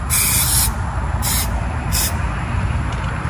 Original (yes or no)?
yes